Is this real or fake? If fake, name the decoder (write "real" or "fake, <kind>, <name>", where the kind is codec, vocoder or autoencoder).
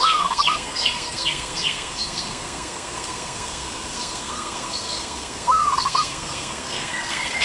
fake, codec, SNAC